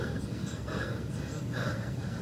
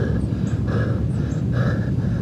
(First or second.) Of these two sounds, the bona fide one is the second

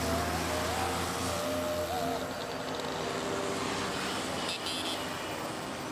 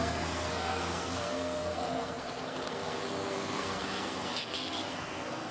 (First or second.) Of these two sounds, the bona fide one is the first